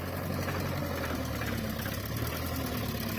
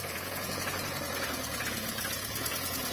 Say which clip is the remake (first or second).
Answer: second